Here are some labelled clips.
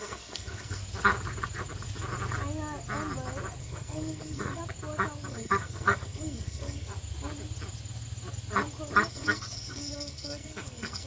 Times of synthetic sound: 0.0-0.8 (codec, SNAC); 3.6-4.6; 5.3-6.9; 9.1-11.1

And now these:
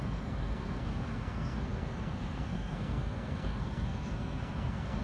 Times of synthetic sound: 0.0-5.0 (codec, SNAC)

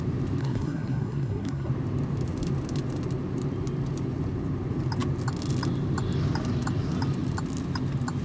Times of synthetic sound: 0.4-1.7 (codec, SNAC)

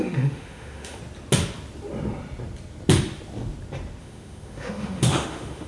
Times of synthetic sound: 0.0-1.0 (autoencoder, DAC-VAE); 4.0-5.7

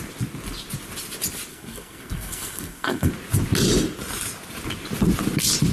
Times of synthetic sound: 1.5-3.1 (codec, SNAC)